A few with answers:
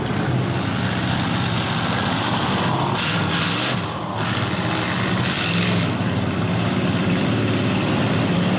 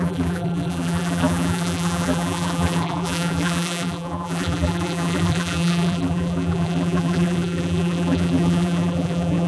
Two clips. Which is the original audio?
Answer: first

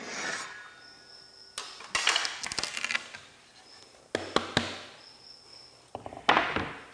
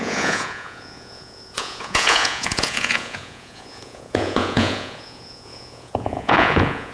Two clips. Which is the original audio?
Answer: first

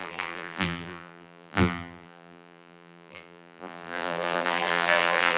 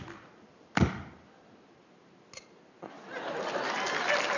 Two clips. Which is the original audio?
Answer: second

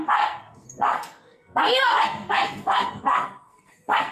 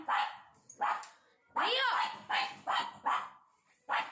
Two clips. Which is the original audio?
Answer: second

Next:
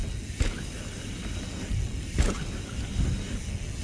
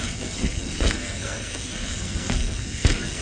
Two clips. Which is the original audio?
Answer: first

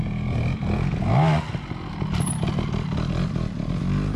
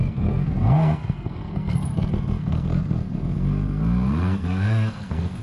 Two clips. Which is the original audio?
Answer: first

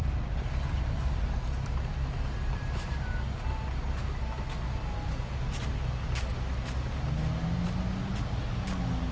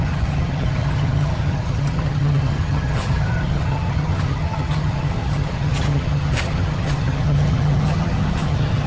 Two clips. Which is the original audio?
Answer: first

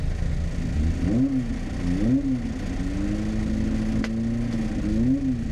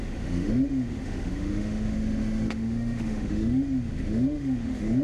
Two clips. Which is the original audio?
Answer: first